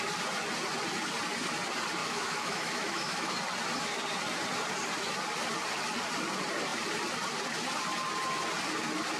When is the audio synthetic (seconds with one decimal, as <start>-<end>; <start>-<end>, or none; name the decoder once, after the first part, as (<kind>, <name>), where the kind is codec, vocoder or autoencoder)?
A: 2.0-3.3 (autoencoder, DAC-VAE)